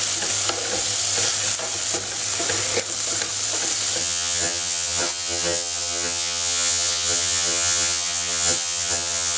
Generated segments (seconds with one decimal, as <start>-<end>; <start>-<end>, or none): 4.0-9.4